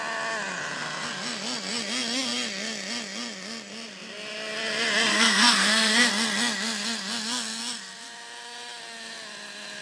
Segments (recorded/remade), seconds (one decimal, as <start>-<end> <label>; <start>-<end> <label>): 0.0-5.1 recorded; 5.1-6.1 remade; 6.1-9.8 recorded